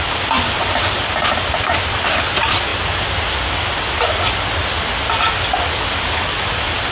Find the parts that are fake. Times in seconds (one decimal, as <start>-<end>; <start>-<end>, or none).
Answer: none